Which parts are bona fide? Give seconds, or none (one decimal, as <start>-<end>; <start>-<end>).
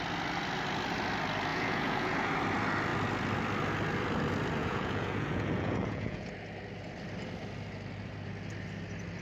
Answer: 0.0-1.5; 2.3-4.6; 6.3-9.2